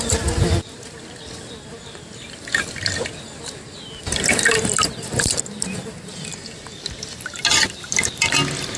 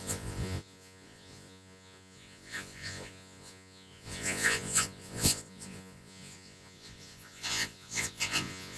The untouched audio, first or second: first